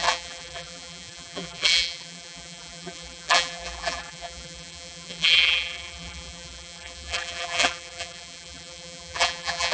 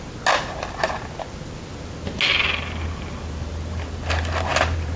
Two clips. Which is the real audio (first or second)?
second